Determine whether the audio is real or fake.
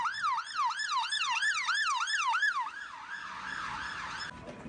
real